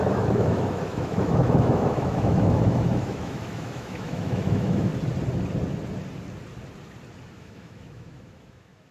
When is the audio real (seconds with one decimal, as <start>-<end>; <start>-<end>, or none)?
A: 4.9-7.3